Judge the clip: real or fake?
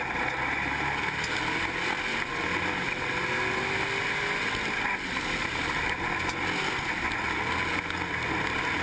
real